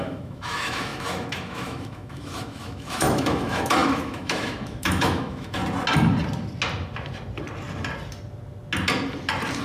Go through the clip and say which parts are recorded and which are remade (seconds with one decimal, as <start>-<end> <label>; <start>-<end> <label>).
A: 0.0-5.6 remade; 5.6-9.6 recorded